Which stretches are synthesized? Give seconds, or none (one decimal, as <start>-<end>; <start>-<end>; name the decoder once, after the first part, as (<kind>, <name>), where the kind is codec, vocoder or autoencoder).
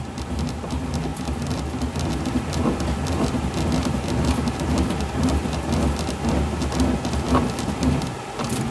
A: none